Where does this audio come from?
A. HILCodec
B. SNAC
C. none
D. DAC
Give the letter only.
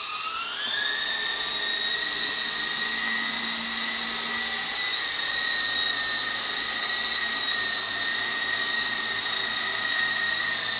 C